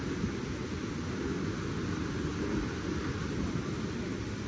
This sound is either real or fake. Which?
real